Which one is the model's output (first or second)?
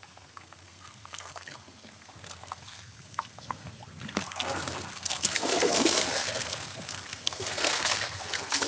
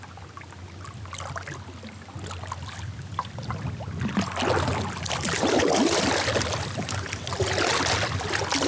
first